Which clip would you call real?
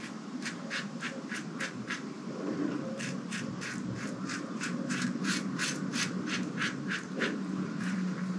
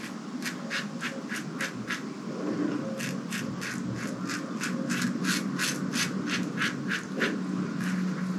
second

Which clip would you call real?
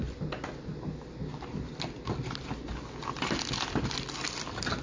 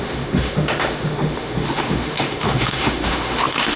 first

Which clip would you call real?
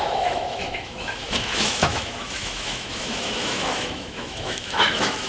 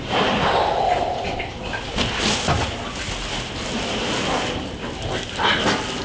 second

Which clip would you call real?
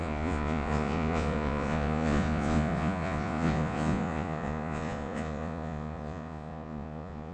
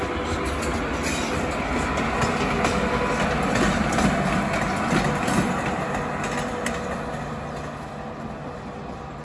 second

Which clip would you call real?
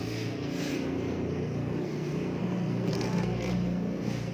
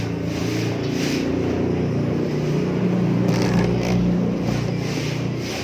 second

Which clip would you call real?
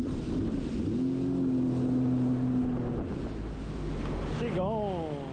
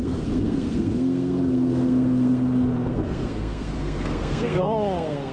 first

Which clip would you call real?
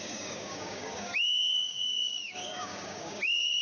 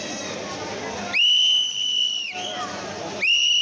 second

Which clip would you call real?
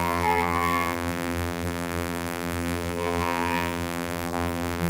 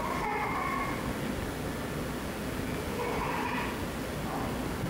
second